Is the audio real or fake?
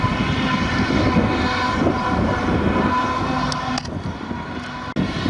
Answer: real